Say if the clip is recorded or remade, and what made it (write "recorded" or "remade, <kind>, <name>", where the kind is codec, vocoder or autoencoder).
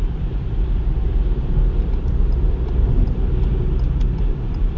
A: remade, vocoder, BigVGAN v2